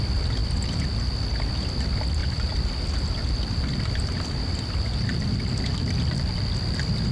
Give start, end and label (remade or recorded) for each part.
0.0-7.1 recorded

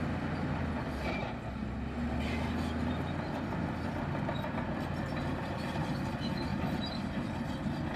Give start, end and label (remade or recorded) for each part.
0.0-5.3 recorded; 5.3-6.1 remade; 6.1-6.5 recorded; 6.5-7.4 remade; 7.4-8.0 recorded

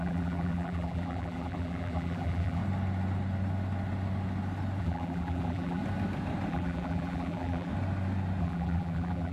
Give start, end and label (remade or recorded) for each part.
0.0-2.6 remade; 2.6-4.8 recorded; 4.8-5.8 remade; 5.8-6.5 recorded; 6.5-7.7 remade; 7.7-8.4 recorded; 8.4-9.3 remade

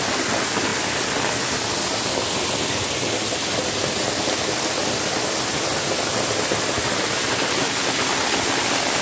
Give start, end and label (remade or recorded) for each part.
0.0-9.0 recorded

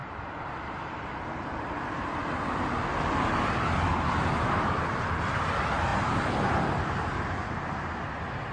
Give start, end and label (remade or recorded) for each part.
0.0-2.1 remade; 2.1-3.9 recorded; 3.9-5.4 remade; 5.4-8.5 recorded

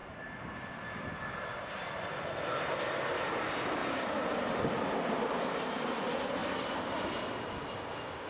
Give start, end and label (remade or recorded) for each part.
0.0-3.8 recorded; 3.8-4.9 remade; 4.9-8.3 recorded

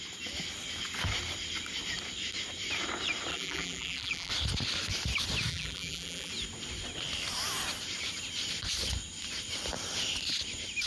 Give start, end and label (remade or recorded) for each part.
0.0-3.3 recorded; 3.3-4.3 remade; 4.3-5.5 recorded; 5.5-6.3 remade; 6.3-10.9 recorded

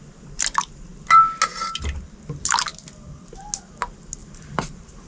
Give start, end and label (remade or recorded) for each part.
0.0-4.2 recorded; 4.2-5.1 remade